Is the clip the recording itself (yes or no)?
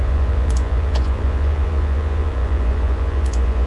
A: no